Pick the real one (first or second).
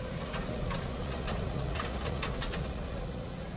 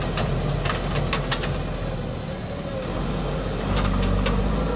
second